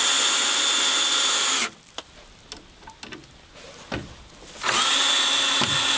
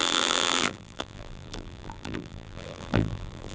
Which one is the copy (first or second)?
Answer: second